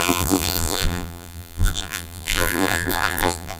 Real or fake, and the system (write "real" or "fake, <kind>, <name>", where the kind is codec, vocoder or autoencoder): fake, vocoder, BigVGAN v2